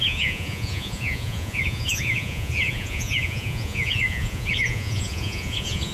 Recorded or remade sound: remade